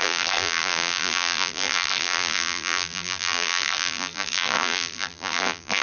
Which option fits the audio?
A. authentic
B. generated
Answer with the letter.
B